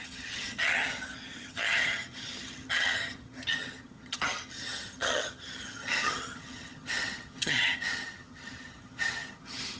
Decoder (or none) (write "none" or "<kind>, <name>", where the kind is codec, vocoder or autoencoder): vocoder, HiFi-GAN